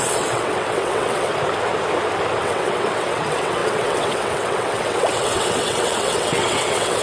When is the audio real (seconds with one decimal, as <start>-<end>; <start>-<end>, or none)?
1.3-2.4